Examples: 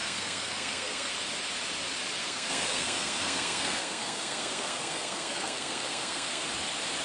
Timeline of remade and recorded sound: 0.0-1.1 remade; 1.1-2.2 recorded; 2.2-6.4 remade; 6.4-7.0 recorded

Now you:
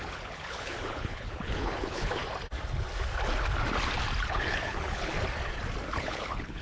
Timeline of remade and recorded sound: 0.0-2.2 remade; 2.2-4.3 recorded; 4.3-5.1 remade; 5.1-5.9 recorded; 5.9-6.6 remade